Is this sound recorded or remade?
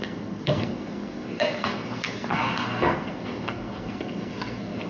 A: remade